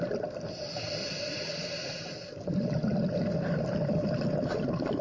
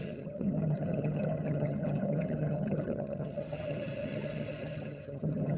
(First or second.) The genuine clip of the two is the first